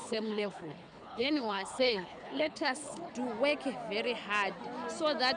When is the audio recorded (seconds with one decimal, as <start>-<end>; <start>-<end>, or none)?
3.1-5.4